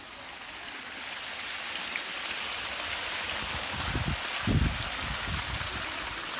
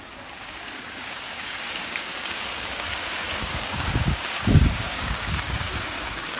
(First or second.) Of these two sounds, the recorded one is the first